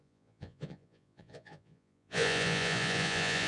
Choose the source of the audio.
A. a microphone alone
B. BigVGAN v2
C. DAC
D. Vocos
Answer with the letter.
D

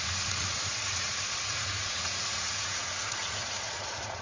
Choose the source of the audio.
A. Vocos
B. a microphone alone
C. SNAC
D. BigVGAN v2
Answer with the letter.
A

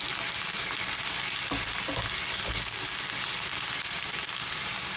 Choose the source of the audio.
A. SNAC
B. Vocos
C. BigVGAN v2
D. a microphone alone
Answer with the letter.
D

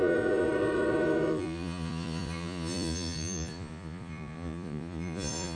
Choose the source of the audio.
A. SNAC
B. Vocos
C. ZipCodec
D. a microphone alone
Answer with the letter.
B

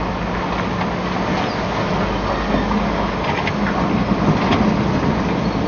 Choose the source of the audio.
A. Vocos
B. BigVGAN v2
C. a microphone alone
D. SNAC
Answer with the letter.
C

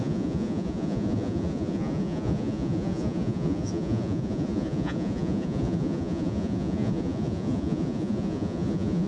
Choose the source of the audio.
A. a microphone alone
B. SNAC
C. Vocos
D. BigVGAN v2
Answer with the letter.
C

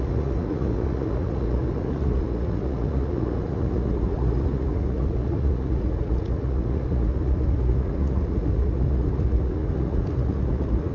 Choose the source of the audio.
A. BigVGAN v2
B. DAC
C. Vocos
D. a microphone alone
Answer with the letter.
C